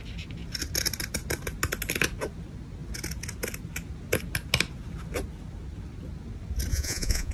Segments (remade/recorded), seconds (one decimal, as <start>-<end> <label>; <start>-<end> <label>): 0.0-6.7 recorded; 6.7-7.3 remade